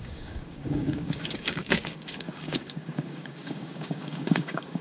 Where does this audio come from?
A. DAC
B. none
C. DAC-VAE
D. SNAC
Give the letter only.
A